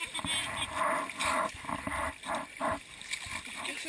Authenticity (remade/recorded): recorded